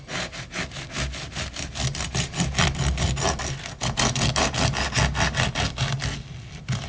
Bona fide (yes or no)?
yes